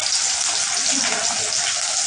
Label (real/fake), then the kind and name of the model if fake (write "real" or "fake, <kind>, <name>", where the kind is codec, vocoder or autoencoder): real